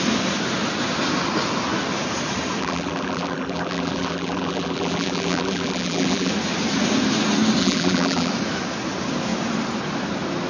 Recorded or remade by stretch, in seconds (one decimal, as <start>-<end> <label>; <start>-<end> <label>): 0.0-2.6 recorded; 2.6-6.3 remade; 6.3-7.6 recorded; 7.6-8.3 remade; 8.3-10.5 recorded